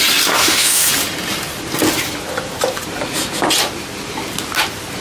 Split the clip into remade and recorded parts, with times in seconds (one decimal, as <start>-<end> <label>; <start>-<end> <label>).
0.0-0.4 recorded; 0.4-0.9 remade; 0.9-5.0 recorded